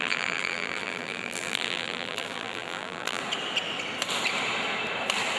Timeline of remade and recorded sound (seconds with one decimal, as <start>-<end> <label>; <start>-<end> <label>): 0.0-3.2 remade; 3.2-5.4 recorded